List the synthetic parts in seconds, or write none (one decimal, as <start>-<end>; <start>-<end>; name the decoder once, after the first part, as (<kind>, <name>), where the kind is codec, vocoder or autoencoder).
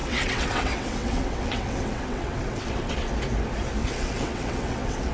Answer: 0.0-3.1 (vocoder, WaveNeXt); 3.8-5.1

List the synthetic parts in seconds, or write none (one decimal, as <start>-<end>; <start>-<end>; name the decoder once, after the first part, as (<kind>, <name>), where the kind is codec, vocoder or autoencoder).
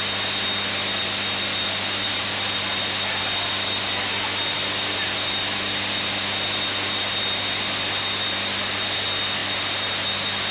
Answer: none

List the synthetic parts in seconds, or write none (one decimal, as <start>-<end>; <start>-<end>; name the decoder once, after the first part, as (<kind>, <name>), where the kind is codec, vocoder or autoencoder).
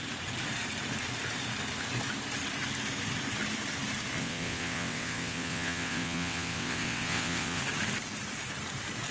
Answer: 4.2-7.6 (vocoder, WaveNeXt)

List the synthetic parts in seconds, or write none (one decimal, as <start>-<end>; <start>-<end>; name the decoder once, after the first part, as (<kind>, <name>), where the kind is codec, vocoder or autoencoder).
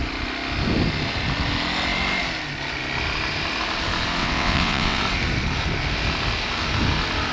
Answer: 4.2-5.0 (vocoder, WaveNeXt)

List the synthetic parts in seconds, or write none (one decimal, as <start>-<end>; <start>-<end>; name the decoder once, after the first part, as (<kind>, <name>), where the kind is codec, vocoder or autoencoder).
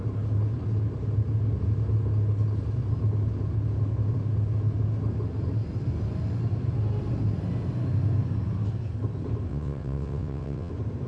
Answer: 9.5-10.7 (vocoder, WaveNeXt)